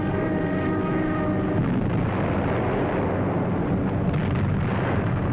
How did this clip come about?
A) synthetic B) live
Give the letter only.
B